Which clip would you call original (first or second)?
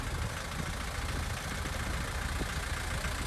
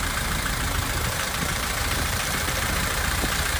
first